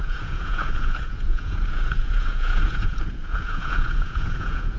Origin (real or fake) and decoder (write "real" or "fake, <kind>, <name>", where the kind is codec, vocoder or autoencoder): fake, vocoder, Vocos